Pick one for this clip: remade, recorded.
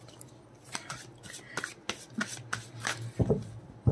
recorded